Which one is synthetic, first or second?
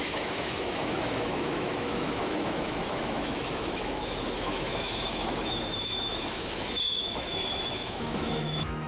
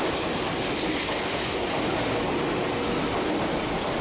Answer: first